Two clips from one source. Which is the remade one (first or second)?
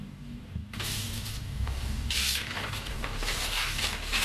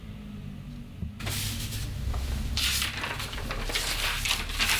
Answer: first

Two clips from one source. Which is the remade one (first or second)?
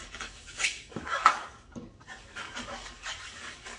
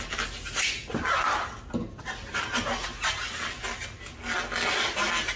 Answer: first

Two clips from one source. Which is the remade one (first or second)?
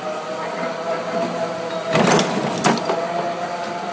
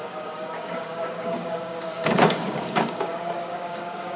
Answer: second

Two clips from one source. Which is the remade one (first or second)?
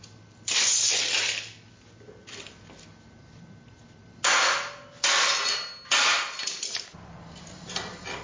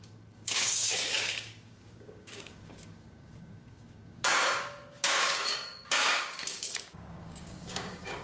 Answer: second